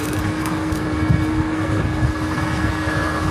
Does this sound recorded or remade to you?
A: remade